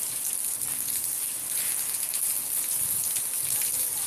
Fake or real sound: real